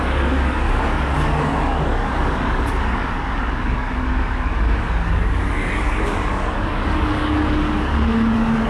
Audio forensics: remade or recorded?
remade